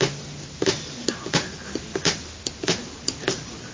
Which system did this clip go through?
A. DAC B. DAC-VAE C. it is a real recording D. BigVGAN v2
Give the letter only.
C